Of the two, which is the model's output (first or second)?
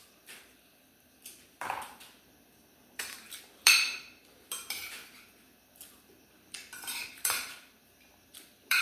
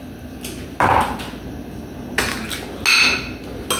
first